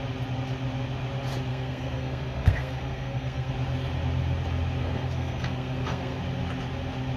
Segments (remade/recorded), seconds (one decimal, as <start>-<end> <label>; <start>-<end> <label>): 0.0-1.5 recorded; 1.5-3.5 remade; 3.5-4.8 recorded; 4.8-6.2 remade; 6.2-7.2 recorded